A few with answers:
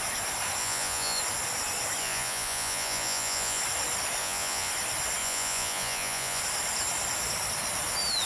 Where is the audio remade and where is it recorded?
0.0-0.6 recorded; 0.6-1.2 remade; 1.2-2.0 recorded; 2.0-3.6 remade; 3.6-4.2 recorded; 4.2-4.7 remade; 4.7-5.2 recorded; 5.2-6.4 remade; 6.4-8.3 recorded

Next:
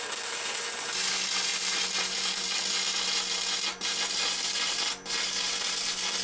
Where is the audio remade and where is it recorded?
0.0-6.2 recorded

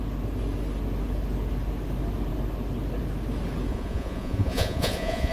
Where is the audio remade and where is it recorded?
0.0-3.7 recorded; 3.7-5.3 remade

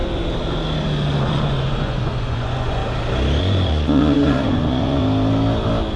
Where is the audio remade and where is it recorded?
0.0-1.2 recorded; 1.2-2.8 remade; 2.8-3.4 recorded; 3.4-5.0 remade; 5.0-6.0 recorded

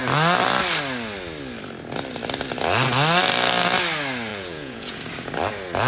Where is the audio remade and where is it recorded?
0.0-4.3 recorded; 4.3-5.0 remade; 5.0-5.9 recorded

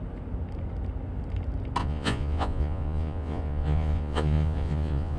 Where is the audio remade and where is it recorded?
0.0-1.8 recorded; 1.8-5.2 remade

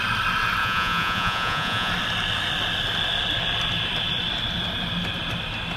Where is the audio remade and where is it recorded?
0.0-0.6 recorded; 0.6-1.9 remade; 1.9-5.8 recorded

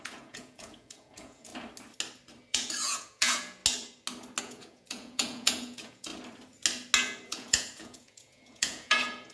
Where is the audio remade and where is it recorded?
0.0-1.5 remade; 1.5-2.4 recorded; 2.4-3.6 remade; 3.6-4.4 recorded; 4.4-6.1 remade; 6.1-7.3 recorded; 7.3-9.3 remade